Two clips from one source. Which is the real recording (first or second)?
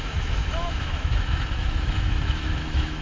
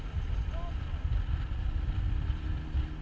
second